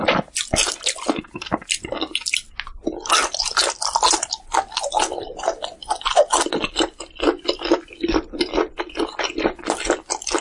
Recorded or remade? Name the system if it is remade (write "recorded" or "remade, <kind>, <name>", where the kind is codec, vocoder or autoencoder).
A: recorded